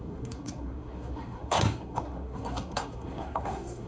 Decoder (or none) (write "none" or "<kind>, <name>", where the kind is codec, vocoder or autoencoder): codec, SNAC